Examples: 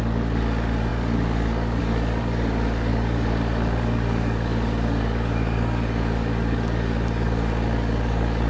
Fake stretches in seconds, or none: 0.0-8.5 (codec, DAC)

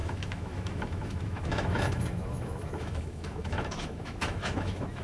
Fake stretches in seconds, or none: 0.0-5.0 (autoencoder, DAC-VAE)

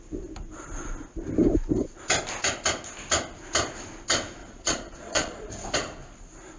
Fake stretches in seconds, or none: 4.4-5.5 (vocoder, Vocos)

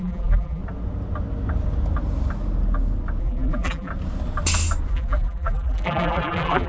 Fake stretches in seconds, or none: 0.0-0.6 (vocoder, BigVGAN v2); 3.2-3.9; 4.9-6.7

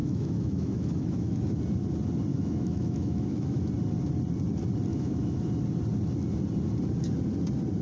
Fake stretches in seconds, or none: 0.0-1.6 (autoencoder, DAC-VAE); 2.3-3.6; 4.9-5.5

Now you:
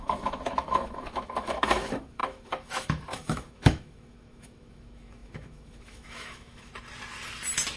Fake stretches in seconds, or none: 0.0-6.7 (autoencoder, DAC-VAE)

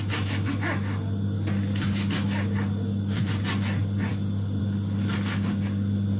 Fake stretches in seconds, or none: none